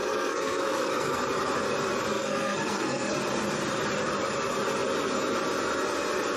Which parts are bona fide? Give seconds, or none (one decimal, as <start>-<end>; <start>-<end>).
1.2-2.1; 3.2-6.4